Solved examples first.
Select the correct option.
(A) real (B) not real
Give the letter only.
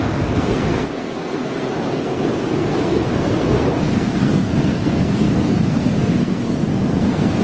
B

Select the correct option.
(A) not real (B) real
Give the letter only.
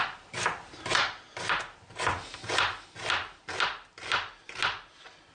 B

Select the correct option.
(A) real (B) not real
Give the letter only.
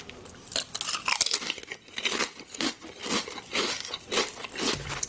A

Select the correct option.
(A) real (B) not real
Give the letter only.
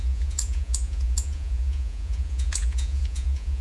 B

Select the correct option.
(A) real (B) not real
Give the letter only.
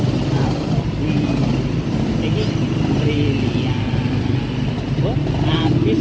A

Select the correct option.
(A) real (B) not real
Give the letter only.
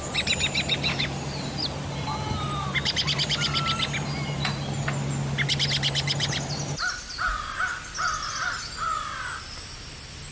A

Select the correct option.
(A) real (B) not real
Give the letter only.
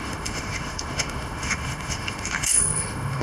B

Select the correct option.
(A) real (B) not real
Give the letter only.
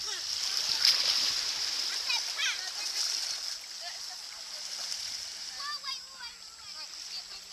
A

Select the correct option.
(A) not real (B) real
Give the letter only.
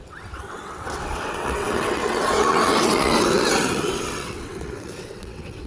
A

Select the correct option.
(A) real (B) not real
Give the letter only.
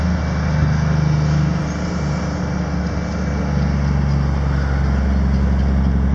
A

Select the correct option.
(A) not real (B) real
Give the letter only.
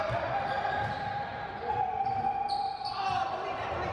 B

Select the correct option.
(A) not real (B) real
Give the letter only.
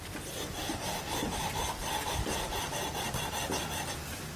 A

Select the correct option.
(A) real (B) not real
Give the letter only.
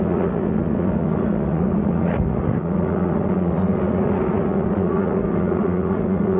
B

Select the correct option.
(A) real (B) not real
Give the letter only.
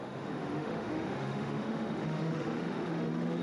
B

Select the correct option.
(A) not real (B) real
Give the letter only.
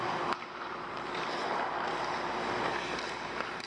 B